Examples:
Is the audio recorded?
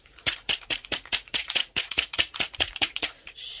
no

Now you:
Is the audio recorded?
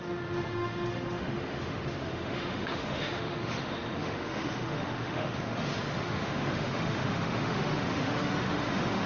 no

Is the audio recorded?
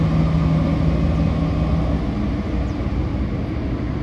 yes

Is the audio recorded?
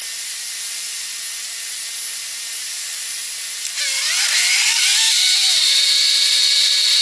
yes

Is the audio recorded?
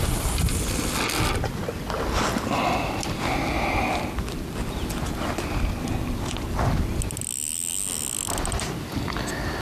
yes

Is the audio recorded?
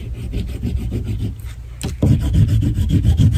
yes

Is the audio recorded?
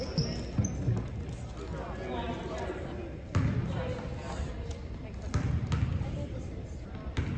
yes